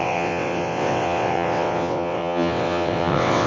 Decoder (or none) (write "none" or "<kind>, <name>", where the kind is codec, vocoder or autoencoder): vocoder, WaveNeXt